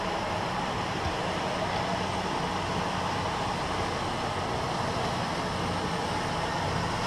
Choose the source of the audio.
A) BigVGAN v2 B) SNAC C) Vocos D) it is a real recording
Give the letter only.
D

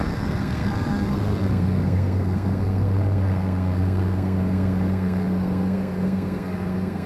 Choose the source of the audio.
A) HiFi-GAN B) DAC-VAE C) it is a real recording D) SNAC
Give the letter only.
D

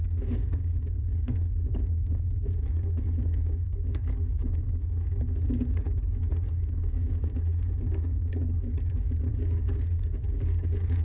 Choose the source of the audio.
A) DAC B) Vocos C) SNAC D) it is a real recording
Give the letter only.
A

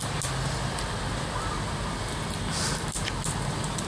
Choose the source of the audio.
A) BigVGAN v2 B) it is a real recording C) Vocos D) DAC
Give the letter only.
B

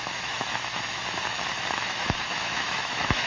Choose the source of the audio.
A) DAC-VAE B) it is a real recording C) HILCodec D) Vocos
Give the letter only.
A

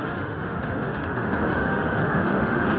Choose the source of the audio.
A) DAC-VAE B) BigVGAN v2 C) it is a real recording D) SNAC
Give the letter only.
A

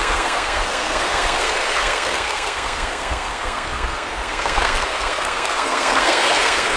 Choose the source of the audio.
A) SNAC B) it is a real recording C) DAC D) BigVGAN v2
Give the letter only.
A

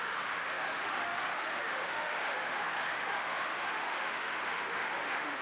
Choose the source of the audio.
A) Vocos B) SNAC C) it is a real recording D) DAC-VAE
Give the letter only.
D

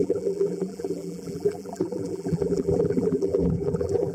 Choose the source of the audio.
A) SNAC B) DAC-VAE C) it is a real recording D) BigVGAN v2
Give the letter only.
D